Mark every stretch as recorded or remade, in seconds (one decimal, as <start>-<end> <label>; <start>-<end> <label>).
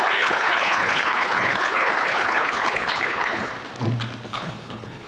0.0-3.5 remade; 3.5-4.3 recorded; 4.3-5.1 remade